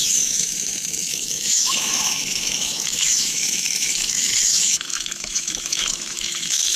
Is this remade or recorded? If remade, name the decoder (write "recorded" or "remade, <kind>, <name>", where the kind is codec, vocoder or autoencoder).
remade, autoencoder, DAC-VAE